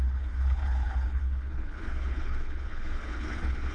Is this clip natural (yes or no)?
no